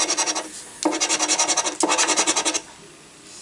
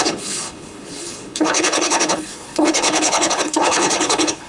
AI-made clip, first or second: second